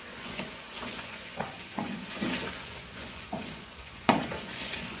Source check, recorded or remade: remade